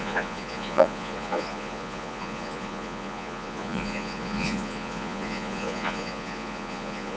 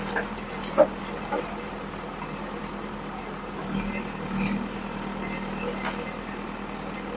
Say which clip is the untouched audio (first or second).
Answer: second